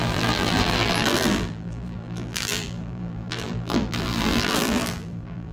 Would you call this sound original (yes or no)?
no